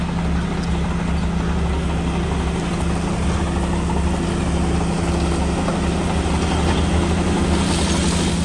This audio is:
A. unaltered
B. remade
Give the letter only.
A